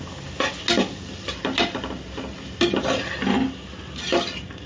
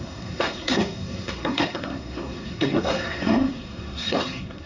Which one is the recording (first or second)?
first